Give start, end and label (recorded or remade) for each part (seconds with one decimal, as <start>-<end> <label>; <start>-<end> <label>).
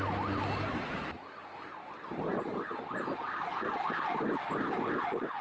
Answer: 0.0-5.4 recorded